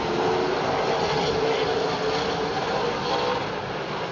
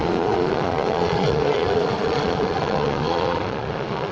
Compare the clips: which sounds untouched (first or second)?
first